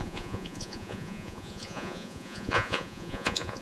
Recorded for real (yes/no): no